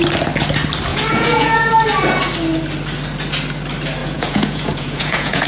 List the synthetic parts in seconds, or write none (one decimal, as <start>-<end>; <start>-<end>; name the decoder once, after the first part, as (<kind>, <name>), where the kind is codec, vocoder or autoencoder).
0.9-1.7 (vocoder, Vocos); 4.0-5.5